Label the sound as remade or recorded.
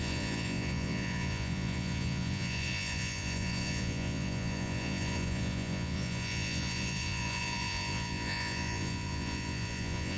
remade